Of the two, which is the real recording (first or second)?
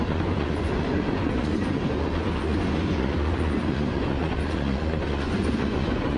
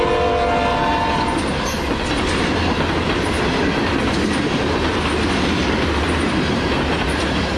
second